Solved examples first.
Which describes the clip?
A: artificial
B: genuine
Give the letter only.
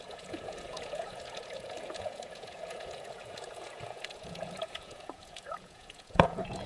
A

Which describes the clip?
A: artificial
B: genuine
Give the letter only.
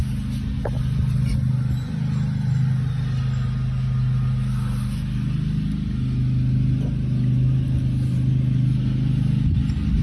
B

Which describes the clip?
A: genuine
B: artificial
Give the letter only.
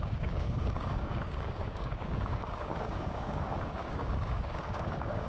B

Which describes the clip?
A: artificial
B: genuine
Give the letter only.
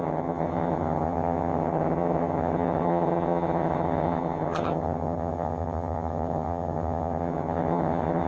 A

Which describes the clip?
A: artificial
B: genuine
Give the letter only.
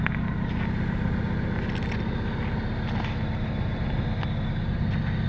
B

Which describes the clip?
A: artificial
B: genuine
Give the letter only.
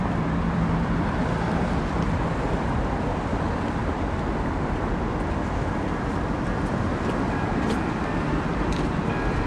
A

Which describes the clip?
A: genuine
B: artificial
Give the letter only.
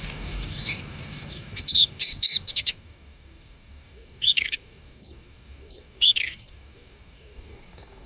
B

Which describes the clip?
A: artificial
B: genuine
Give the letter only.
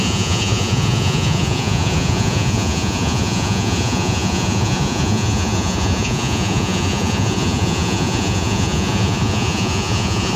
A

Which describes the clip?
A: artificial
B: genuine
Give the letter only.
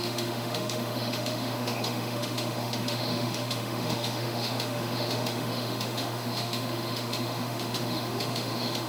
A